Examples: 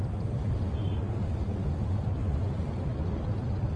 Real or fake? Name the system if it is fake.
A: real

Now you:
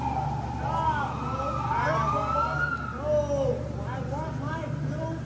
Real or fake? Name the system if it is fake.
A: real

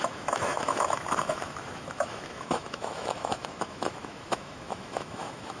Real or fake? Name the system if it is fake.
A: fake, autoencoder, DAC-VAE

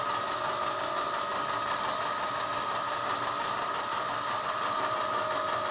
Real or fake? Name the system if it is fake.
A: real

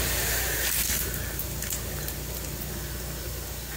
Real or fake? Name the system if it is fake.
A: real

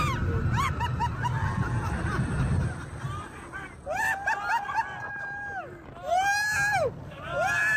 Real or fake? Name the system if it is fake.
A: real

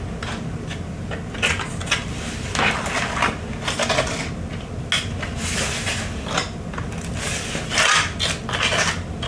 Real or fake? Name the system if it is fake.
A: real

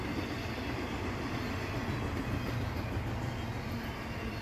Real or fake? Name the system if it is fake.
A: real